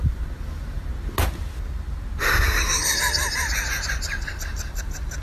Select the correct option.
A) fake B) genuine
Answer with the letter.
B